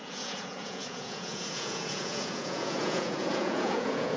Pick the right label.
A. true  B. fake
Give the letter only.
B